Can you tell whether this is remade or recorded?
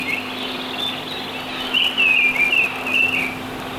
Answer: recorded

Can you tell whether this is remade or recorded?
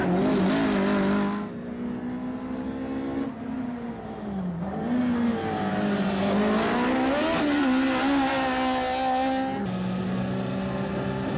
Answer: recorded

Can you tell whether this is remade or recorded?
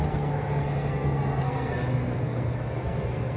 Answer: remade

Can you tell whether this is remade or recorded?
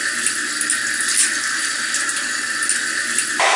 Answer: recorded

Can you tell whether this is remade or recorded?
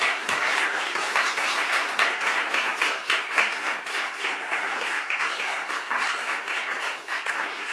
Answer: remade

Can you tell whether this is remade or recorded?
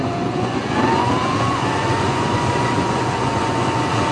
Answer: remade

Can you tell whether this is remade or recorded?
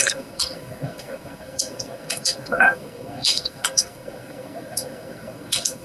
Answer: remade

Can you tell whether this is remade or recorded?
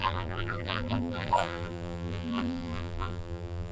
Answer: remade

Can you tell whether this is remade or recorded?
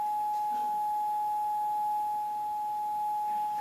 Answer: recorded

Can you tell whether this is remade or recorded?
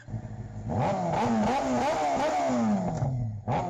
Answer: recorded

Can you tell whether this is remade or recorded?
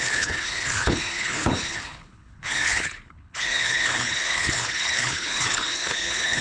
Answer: remade